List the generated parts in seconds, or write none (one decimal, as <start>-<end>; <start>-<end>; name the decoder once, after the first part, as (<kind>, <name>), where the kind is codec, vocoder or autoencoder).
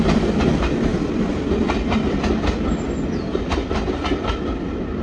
none